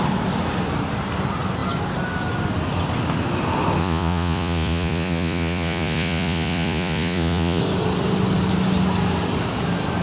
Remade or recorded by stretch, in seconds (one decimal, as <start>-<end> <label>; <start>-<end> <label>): 0.0-3.8 recorded; 3.8-7.6 remade; 7.6-10.0 recorded